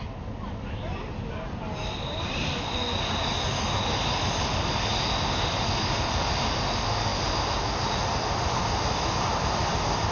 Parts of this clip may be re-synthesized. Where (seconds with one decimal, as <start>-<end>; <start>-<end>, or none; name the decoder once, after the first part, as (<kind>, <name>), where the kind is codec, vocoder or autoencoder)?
none